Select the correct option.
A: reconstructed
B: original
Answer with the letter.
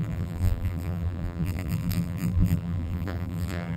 A